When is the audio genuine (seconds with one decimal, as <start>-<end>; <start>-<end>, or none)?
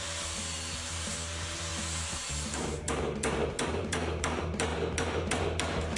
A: none